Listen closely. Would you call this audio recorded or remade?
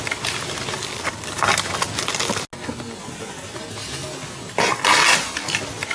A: recorded